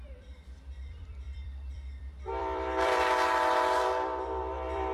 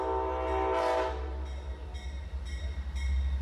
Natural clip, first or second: second